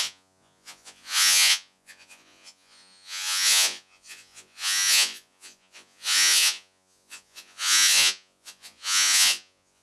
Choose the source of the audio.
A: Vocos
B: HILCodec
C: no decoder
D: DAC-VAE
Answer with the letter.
A